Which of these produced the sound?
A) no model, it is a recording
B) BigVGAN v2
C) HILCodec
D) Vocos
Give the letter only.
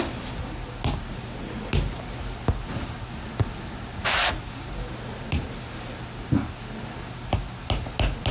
A